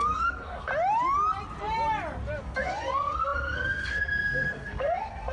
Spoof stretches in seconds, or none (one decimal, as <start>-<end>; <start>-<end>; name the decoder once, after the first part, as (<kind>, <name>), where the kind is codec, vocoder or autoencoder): 0.0-0.7 (codec, SNAC); 2.4-5.3